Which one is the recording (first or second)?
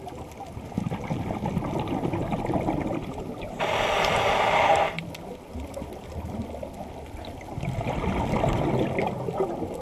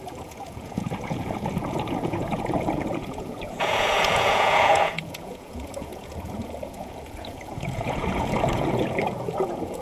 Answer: first